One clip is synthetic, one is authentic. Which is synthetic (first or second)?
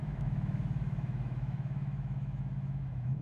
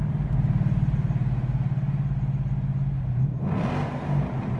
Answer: first